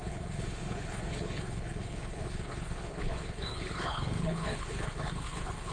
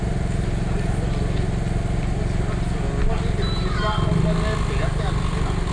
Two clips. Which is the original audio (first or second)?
second